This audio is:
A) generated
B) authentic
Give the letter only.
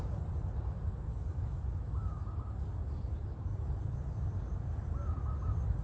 B